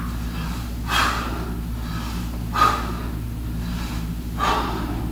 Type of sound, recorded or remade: recorded